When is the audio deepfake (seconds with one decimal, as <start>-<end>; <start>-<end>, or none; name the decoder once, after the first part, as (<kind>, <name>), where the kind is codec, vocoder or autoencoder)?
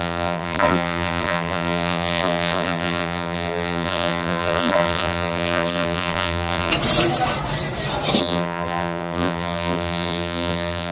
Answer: 0.0-6.7 (vocoder, BigVGAN v2); 8.2-10.9